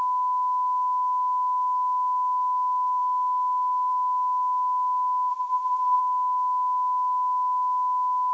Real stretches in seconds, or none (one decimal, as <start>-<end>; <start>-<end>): 0.0-5.3; 6.0-8.3

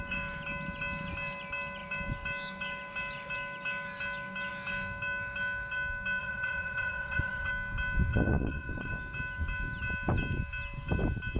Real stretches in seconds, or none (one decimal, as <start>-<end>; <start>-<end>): 0.0-6.2; 7.5-8.1; 8.9-11.4

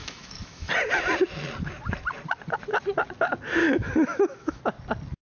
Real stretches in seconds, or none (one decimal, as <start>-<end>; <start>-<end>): 0.7-3.6; 4.6-5.2

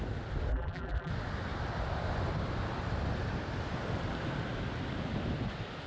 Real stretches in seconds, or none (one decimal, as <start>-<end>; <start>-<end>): 0.0-0.5; 1.1-5.9